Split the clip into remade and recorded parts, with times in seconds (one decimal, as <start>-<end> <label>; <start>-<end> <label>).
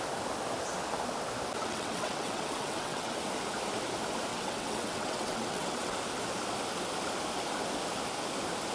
0.0-1.6 recorded; 1.6-3.1 remade; 3.1-4.3 recorded; 4.3-5.9 remade; 5.9-8.7 recorded